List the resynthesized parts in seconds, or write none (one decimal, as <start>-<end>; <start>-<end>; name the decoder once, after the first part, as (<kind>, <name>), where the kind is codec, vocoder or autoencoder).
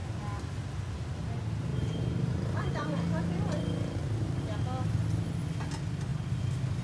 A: 1.7-2.6 (vocoder, BigVGAN v2); 4.0-4.6